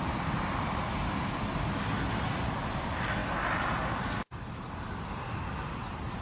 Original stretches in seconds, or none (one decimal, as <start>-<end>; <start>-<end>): 0.0-6.2